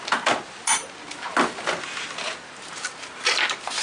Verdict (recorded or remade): recorded